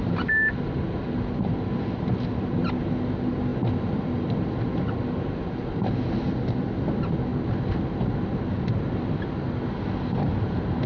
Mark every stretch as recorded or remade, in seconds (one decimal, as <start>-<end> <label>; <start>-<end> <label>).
0.0-10.9 recorded